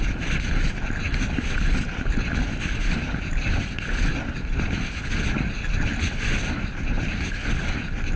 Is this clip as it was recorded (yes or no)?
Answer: yes